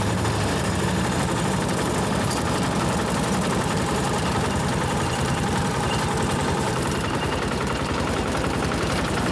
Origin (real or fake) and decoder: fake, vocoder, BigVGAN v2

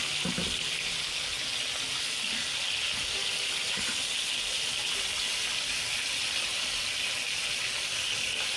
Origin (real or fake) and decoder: real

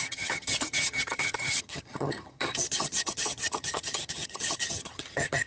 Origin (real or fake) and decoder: fake, vocoder, HiFi-GAN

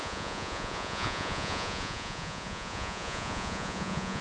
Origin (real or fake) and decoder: fake, vocoder, Vocos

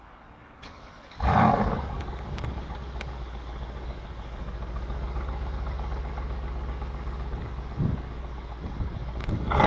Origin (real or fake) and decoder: fake, codec, DAC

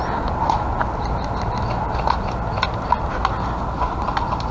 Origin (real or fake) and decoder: real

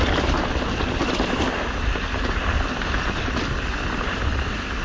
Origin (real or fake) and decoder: real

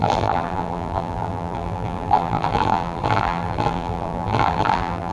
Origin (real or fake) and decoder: fake, vocoder, BigVGAN v2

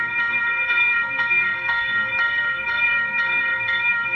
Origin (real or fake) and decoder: fake, codec, SNAC